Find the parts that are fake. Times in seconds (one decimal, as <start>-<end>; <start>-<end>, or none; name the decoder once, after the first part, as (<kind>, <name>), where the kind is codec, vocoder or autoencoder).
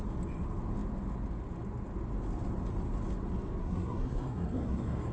3.6-5.1 (codec, SNAC)